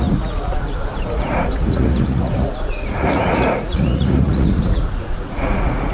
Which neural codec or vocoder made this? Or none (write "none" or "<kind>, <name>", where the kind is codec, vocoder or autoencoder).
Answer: vocoder, Vocos